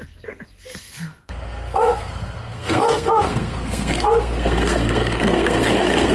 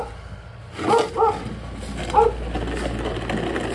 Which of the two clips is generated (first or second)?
first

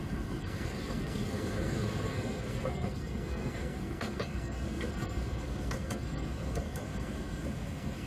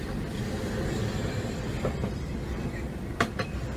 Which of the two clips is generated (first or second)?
first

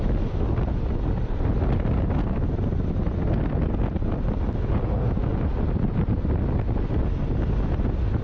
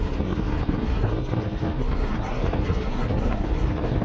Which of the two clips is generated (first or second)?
second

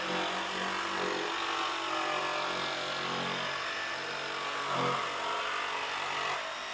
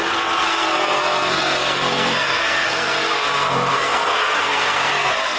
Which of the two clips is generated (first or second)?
second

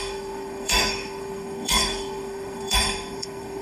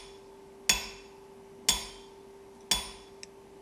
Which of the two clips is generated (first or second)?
first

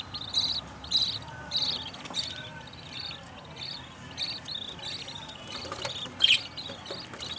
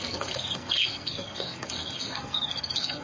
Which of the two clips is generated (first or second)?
second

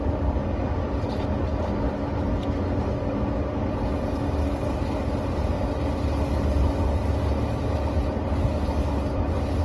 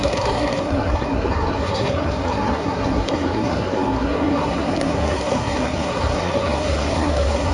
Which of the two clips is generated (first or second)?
second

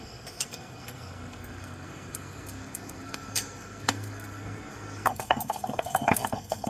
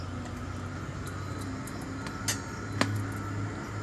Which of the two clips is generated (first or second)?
first